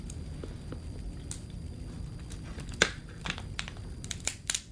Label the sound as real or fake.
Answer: real